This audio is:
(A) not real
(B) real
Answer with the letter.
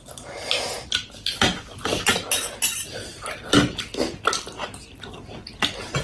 B